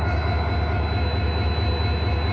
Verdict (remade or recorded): recorded